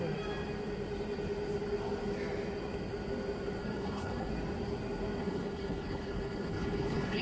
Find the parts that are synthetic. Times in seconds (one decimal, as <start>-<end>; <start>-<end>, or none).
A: 3.6-4.3; 5.2-7.2